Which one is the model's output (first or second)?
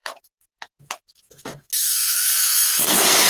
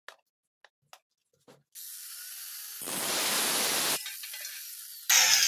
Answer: first